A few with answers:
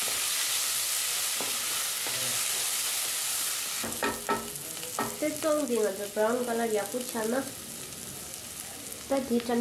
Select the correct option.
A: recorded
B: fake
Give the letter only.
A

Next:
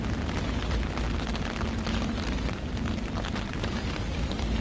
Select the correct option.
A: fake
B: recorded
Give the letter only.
B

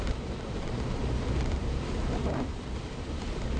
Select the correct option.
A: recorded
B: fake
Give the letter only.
B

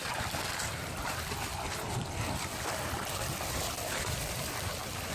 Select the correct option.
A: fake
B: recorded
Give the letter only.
A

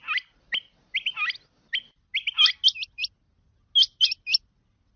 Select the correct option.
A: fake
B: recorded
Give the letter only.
B